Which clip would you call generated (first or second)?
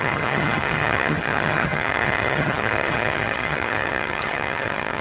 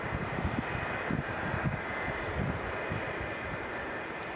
first